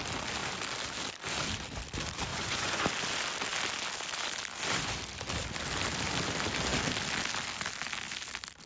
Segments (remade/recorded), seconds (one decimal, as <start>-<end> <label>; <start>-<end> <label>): 0.0-2.3 recorded; 2.3-2.8 remade; 2.8-8.7 recorded